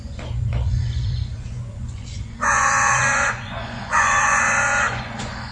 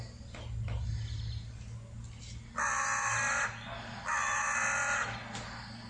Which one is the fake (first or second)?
first